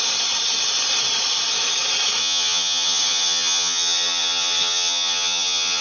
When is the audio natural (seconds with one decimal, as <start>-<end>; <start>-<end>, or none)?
0.0-2.2

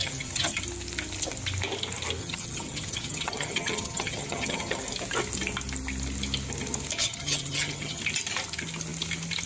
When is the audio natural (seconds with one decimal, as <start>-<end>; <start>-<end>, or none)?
0.6-2.2; 4.8-7.0; 8.0-9.5

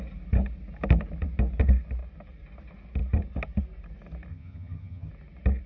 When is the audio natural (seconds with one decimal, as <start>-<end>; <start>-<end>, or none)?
0.0-4.3; 5.1-5.7

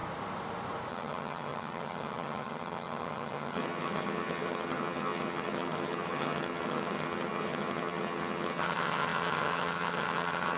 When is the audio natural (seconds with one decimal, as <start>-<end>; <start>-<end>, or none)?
0.0-0.9

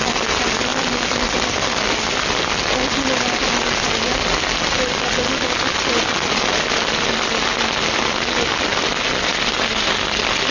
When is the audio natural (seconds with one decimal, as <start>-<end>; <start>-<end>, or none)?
0.0-10.5

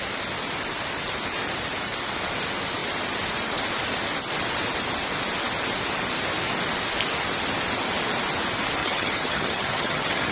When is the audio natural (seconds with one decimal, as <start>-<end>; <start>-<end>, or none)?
0.0-8.8

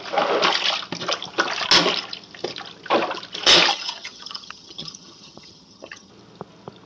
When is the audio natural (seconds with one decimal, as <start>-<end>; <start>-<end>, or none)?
0.0-3.7; 6.1-6.9